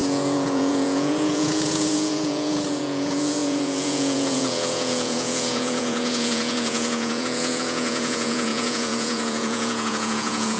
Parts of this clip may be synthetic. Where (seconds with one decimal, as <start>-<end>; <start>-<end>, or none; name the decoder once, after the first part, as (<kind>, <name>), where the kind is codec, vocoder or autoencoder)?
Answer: 0.0-10.6 (vocoder, Vocos)

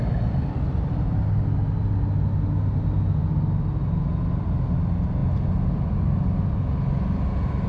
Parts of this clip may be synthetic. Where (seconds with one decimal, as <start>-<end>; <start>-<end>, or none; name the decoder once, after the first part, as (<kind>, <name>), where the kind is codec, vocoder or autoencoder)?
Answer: none

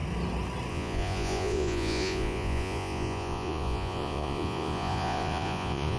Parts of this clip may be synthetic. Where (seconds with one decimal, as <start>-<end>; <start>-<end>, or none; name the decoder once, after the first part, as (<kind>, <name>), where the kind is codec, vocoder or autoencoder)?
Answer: 0.7-6.0 (vocoder, Vocos)

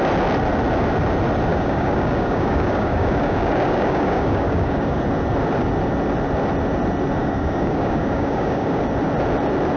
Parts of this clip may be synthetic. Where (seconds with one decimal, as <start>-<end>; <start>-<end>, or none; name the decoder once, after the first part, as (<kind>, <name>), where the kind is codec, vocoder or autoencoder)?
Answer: 1.5-5.0 (codec, DAC); 7.2-8.8